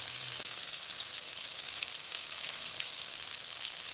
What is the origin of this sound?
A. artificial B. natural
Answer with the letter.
A